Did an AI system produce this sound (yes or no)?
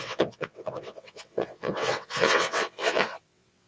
yes